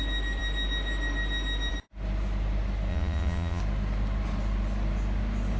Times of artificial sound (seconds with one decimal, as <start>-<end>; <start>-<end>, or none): 2.9-3.6